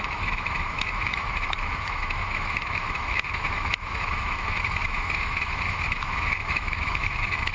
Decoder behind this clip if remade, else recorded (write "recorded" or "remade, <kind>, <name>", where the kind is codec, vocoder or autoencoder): remade, autoencoder, DAC-VAE